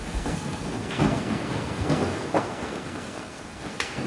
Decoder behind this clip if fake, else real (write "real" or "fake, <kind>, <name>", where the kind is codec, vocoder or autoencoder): fake, codec, SNAC